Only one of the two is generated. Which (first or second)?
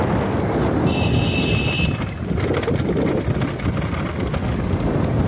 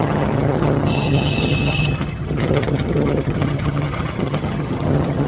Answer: second